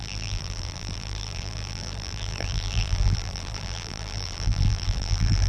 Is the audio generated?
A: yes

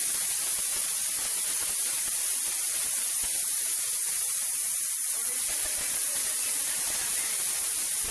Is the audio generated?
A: yes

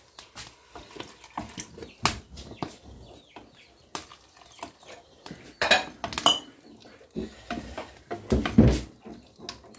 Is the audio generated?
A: no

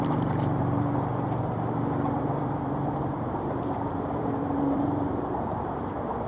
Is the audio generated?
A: yes